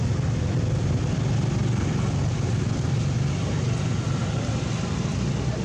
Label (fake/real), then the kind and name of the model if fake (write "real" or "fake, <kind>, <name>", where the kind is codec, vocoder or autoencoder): real